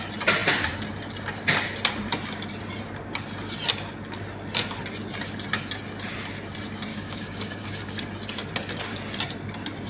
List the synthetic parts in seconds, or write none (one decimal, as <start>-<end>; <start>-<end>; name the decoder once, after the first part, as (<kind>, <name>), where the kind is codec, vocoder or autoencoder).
6.9-8.0 (codec, DAC)